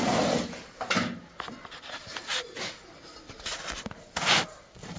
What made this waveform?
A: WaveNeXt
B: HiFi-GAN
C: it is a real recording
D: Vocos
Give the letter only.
C